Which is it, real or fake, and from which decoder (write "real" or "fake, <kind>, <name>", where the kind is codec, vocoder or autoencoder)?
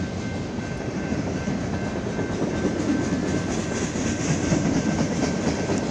real